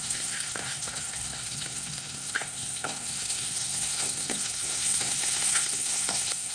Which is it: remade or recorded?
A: remade